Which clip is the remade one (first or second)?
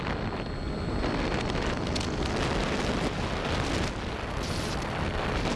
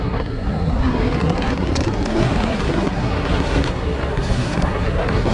second